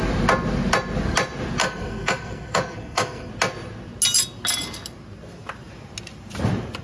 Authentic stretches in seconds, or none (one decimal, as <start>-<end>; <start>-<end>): 0.0-1.6; 3.3-6.8